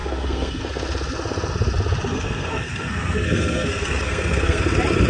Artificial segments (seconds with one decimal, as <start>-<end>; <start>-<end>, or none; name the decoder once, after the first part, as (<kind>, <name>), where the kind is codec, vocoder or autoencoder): 0.0-0.6 (codec, SNAC); 2.1-4.6